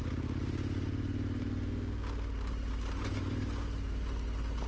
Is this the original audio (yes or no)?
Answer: yes